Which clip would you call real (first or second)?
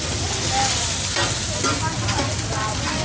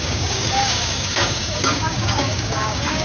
first